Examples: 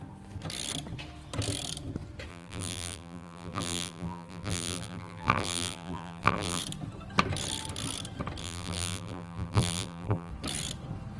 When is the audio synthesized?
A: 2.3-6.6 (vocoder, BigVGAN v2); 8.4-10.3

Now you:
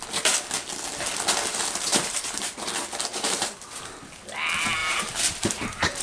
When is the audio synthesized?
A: 1.9-2.7 (vocoder, BigVGAN v2); 3.1-3.8; 4.8-6.0